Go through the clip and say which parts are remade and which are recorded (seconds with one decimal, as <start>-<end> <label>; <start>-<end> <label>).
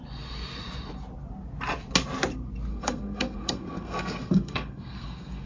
0.0-2.7 recorded; 2.7-5.5 remade